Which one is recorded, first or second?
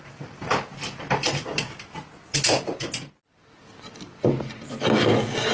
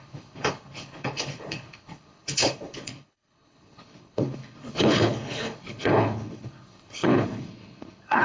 first